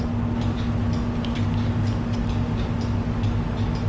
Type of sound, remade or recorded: recorded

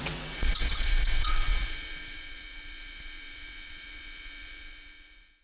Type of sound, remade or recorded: remade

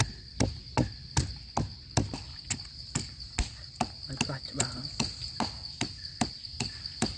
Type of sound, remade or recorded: recorded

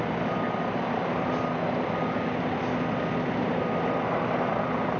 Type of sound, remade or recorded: recorded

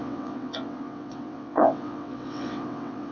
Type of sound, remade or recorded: remade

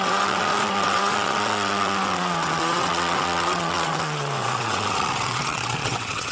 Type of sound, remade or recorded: remade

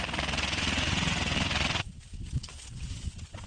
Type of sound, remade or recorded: remade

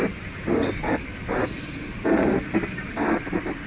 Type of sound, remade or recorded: recorded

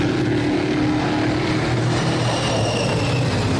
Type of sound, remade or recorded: recorded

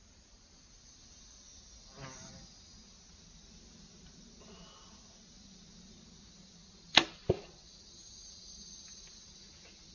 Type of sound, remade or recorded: recorded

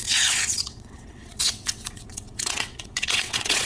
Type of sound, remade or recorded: remade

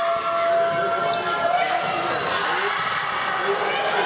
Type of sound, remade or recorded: recorded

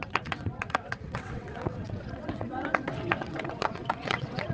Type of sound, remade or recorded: remade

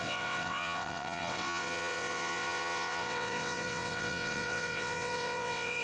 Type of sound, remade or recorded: remade